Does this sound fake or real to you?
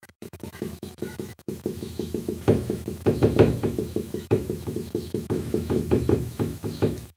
fake